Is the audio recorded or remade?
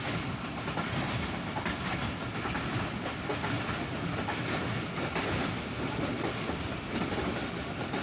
recorded